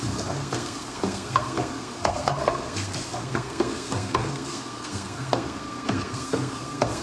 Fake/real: fake